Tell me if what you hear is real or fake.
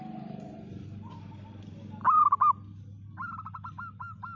real